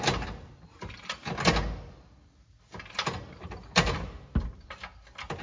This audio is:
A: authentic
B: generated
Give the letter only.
A